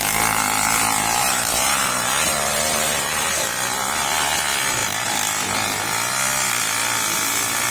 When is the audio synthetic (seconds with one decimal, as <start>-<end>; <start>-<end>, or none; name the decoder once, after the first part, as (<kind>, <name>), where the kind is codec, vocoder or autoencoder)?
1.2-3.4 (vocoder, BigVGAN v2)